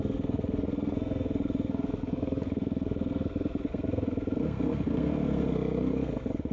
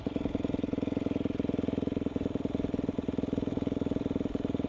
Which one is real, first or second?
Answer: second